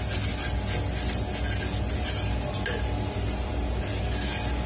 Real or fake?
real